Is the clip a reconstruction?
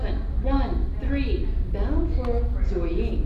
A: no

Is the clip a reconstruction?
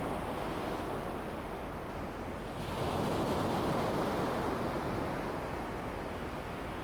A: no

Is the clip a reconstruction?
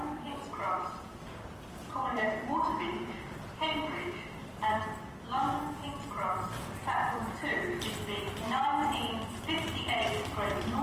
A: yes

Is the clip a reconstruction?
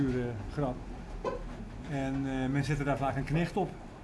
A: no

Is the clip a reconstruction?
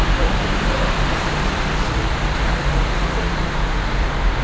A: yes